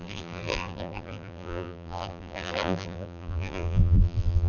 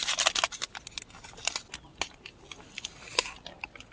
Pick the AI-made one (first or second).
first